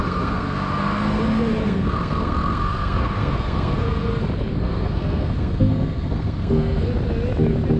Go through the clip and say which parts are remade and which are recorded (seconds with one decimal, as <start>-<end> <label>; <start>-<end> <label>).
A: 0.0-1.2 remade; 1.2-1.6 recorded; 1.6-4.1 remade; 4.1-4.5 recorded; 4.5-6.9 remade; 6.9-7.8 recorded